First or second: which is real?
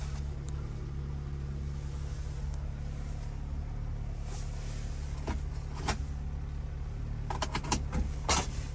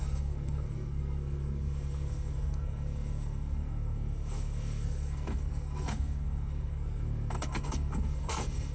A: first